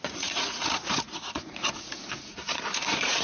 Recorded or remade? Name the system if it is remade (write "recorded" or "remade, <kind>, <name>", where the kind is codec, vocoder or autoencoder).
remade, vocoder, Vocos